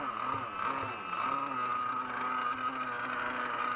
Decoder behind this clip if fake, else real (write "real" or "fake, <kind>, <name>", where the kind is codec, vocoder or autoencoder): real